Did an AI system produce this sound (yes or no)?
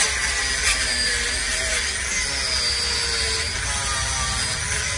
no